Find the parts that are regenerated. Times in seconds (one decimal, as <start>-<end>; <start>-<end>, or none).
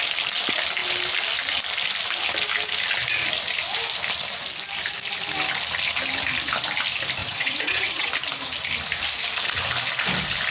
7.2-8.1